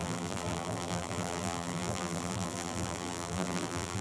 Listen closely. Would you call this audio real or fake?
fake